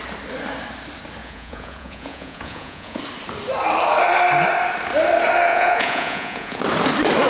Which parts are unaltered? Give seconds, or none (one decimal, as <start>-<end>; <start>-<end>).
0.0-1.2; 3.0-5.5; 6.6-7.3